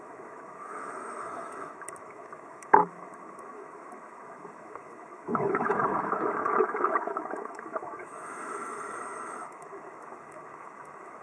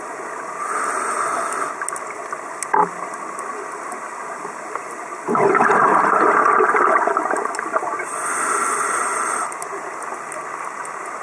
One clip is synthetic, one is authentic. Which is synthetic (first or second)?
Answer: first